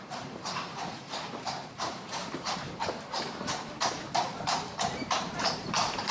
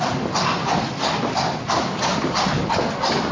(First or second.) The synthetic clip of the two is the first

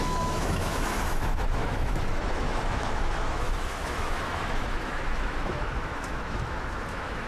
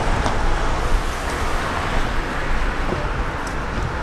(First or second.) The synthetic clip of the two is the first